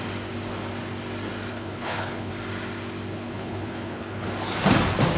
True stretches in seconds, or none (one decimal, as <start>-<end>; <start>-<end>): 0.0-1.5; 2.3-3.1; 4.3-5.2

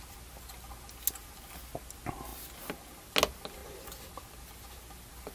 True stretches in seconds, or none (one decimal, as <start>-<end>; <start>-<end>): 0.0-5.3

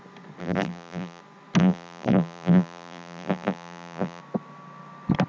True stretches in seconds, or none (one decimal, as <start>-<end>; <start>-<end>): 0.0-0.4; 1.2-1.6; 4.2-5.3

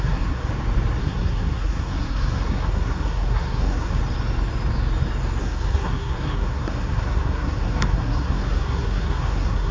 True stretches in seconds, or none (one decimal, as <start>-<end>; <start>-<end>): 0.5-1.0; 4.0-5.4

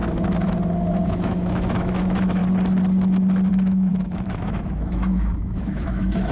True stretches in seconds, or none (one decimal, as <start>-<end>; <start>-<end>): 0.0-1.1; 2.4-3.5

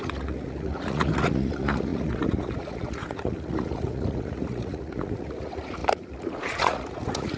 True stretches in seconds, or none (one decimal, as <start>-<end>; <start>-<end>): none